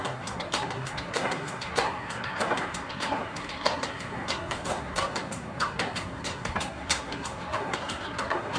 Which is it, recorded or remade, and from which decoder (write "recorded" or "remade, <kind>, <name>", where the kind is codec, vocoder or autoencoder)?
remade, codec, SNAC